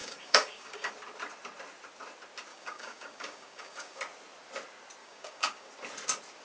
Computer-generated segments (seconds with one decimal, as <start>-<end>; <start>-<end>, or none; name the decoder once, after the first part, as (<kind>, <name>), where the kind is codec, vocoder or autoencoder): 0.0-0.9 (codec, DAC); 2.5-4.0; 5.0-5.7